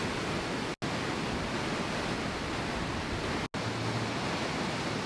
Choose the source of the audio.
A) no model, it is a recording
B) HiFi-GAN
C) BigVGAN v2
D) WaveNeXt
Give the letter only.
A